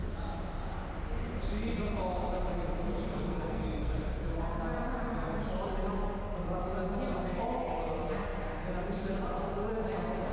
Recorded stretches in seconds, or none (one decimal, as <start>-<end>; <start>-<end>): 0.0-3.1; 3.9-10.3